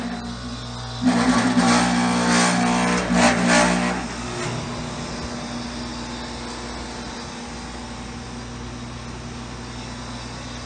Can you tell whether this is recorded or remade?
recorded